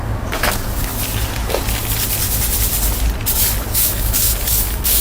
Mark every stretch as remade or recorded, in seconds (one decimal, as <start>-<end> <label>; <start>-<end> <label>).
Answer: 0.0-0.9 remade; 0.9-3.6 recorded; 3.6-5.0 remade